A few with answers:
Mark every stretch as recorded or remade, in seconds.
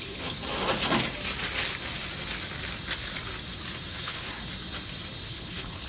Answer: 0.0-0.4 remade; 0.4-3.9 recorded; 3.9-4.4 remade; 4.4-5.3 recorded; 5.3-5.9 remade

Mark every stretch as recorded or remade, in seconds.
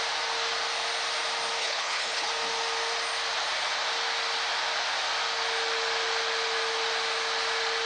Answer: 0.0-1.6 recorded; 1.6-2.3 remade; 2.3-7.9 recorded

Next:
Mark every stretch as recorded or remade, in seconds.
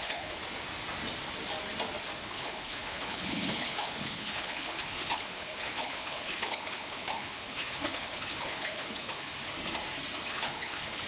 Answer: 0.0-0.4 remade; 0.4-2.2 recorded; 2.2-9.3 remade; 9.3-10.3 recorded; 10.3-11.1 remade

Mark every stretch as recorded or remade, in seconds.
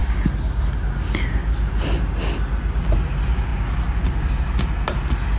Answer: 0.0-5.4 recorded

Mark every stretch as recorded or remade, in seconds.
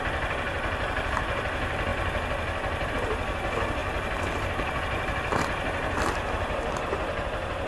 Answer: 0.0-7.7 recorded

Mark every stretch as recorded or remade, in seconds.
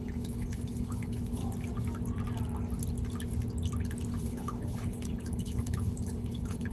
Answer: 0.0-1.4 remade; 1.4-4.1 recorded; 4.1-6.7 remade